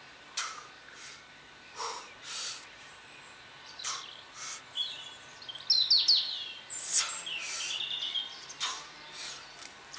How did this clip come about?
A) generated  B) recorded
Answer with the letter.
B